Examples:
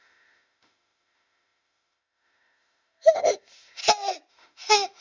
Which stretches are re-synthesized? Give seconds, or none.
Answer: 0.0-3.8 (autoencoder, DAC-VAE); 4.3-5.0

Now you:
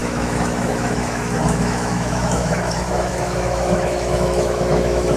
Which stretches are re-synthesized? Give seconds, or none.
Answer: 0.0-5.2 (autoencoder, DAC-VAE)

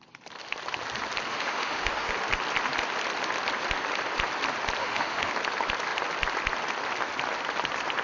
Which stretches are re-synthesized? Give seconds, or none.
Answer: 1.3-2.1 (autoencoder, DAC-VAE); 4.8-5.3